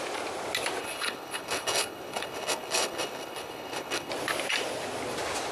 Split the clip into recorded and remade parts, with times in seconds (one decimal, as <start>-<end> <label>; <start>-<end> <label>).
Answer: 0.0-0.8 recorded; 0.8-4.1 remade; 4.1-5.5 recorded